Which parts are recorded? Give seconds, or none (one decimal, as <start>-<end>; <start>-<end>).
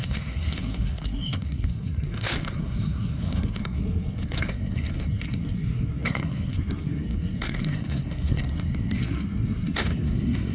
none